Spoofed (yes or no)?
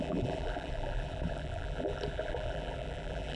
yes